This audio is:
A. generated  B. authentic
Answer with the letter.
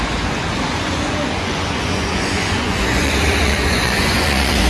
A